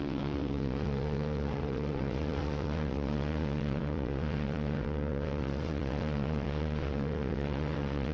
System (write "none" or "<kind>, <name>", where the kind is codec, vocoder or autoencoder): vocoder, WaveNeXt